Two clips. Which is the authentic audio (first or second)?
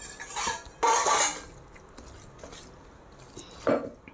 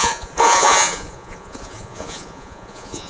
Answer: first